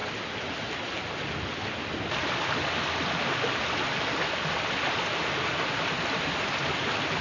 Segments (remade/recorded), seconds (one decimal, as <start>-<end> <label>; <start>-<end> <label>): 0.0-7.2 recorded